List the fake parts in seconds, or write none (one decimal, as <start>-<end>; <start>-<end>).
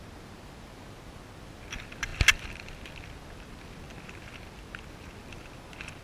none